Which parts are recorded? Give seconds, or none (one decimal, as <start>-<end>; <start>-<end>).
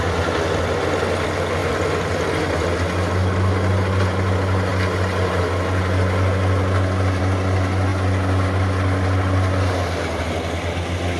0.0-11.2